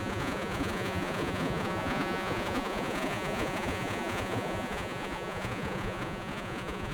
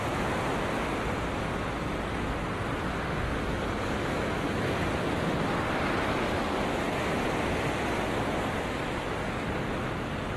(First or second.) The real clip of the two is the second